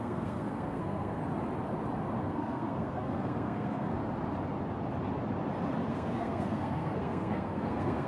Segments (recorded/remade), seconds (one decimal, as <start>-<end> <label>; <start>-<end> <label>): 0.0-1.2 remade; 1.2-2.2 recorded; 2.2-4.0 remade; 4.0-5.9 recorded; 5.9-8.1 remade